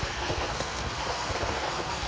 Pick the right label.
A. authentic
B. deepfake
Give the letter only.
B